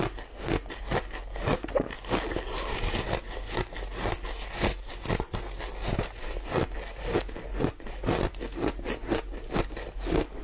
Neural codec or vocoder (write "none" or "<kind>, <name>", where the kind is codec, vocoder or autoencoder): none